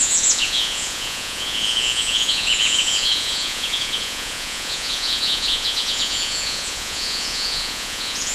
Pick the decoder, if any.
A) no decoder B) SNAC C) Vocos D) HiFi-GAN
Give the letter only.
C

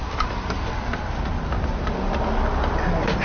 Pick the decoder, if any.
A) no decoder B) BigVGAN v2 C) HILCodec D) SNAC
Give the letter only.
A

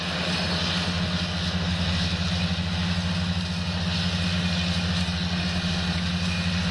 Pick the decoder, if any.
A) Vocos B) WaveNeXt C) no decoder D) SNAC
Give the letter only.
C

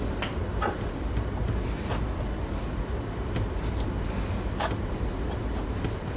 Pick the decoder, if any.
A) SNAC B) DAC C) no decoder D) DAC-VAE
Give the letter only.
C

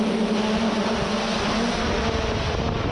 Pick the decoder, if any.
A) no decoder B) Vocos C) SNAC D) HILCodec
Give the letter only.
A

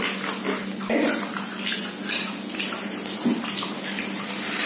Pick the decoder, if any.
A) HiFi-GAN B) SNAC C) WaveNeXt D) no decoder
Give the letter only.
D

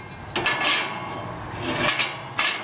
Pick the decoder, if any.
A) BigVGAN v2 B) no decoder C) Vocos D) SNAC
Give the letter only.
B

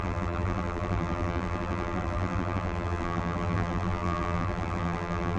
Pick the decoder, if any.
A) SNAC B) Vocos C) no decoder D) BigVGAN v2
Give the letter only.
D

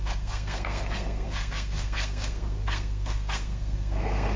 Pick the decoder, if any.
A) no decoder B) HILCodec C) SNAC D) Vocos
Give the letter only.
C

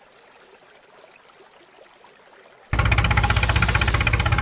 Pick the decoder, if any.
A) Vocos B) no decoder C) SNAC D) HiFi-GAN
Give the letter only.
B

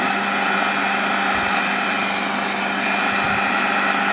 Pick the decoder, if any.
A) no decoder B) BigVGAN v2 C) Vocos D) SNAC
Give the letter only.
A